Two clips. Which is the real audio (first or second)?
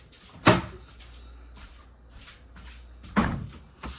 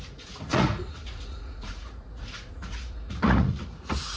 first